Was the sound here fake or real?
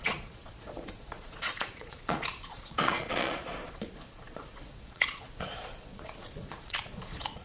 fake